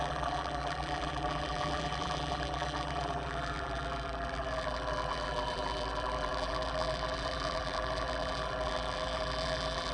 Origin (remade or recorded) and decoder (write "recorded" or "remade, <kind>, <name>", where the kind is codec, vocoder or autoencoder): remade, vocoder, BigVGAN v2